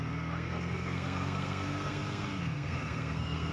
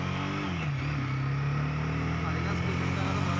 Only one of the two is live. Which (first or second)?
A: second